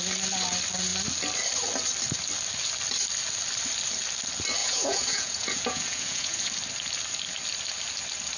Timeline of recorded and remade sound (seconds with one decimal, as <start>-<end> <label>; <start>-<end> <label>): 0.0-4.6 recorded; 4.6-6.5 remade; 6.5-8.4 recorded

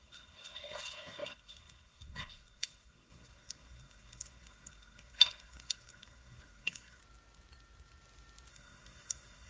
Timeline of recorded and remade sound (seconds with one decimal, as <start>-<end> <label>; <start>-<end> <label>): 0.0-7.0 remade; 7.0-8.5 recorded; 8.5-9.5 remade

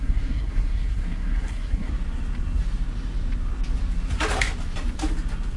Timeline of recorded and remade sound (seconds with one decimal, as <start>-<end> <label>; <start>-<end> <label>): 0.0-1.9 remade; 1.9-5.6 recorded